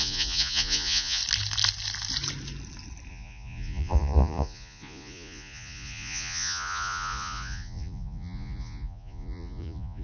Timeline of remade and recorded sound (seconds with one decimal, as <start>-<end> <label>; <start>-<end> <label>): 0.0-1.2 remade; 1.2-3.1 recorded; 3.1-10.0 remade